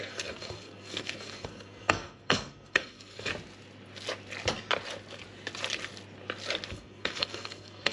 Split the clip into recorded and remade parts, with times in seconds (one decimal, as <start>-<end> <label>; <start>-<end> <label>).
0.0-3.3 remade; 3.3-6.7 recorded; 6.7-7.9 remade